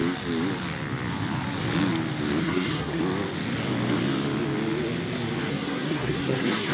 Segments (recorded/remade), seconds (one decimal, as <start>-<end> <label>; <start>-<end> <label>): 0.0-2.4 recorded; 2.4-3.0 remade; 3.0-5.5 recorded; 5.5-6.7 remade